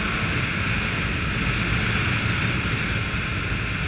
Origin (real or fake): real